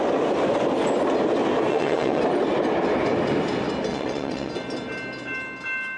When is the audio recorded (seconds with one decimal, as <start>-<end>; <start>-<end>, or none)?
0.0-1.7; 2.2-3.9; 4.5-6.0